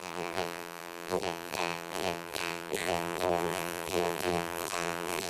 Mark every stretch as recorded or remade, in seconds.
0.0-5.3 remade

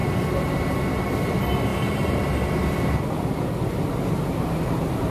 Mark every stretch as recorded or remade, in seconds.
0.0-1.7 recorded; 1.7-2.2 remade; 2.2-5.1 recorded

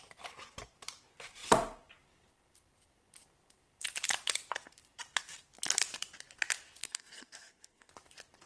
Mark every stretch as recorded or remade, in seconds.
0.0-6.8 recorded; 6.8-7.9 remade; 7.9-8.5 recorded

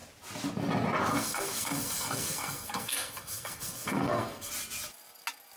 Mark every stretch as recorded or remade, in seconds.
0.0-1.1 recorded; 1.1-4.5 remade; 4.5-5.6 recorded

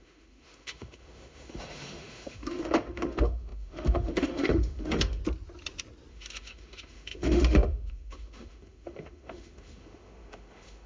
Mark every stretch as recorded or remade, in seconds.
0.0-5.2 remade; 5.2-6.1 recorded; 6.1-10.9 remade

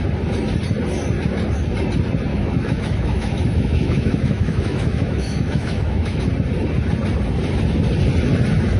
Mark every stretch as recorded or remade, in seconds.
0.0-2.3 recorded; 2.3-6.3 remade; 6.3-8.8 recorded

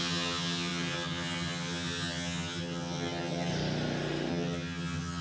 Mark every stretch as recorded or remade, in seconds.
0.0-3.5 remade; 3.5-4.3 recorded; 4.3-5.2 remade

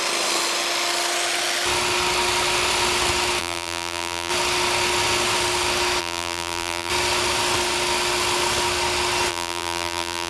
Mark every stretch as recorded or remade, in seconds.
0.0-3.4 recorded; 3.4-4.3 remade; 4.3-6.0 recorded; 6.0-6.9 remade; 6.9-9.3 recorded; 9.3-10.3 remade